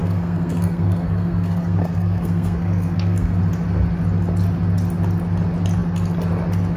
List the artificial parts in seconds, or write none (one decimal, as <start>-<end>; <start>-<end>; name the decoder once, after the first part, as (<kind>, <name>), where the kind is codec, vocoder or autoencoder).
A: 0.0-3.4 (codec, SNAC)